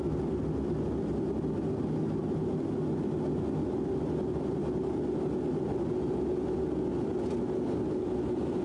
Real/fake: real